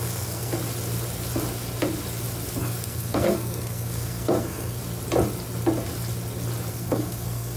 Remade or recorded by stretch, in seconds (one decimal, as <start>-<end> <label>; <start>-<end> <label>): 0.0-0.6 remade; 0.6-2.6 recorded; 2.6-4.8 remade; 4.8-6.7 recorded; 6.7-7.6 remade